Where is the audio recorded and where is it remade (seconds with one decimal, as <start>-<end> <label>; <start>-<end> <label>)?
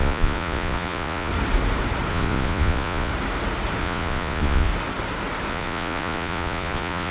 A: 0.0-1.3 remade; 1.3-2.1 recorded; 2.1-3.1 remade; 3.1-3.8 recorded; 3.8-4.7 remade; 4.7-5.5 recorded; 5.5-7.1 remade